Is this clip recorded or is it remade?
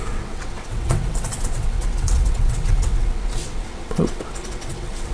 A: remade